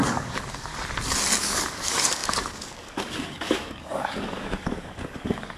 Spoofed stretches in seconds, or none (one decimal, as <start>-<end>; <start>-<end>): 0.0-0.7; 1.4-5.6